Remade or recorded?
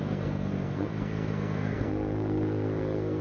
remade